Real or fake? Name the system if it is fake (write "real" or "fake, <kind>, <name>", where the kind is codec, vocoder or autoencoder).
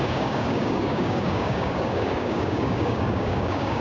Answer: fake, codec, DAC